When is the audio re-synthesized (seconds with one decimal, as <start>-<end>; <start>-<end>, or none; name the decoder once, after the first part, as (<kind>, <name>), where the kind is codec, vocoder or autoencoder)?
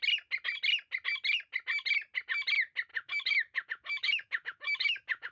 2.9-5.3 (autoencoder, DAC-VAE)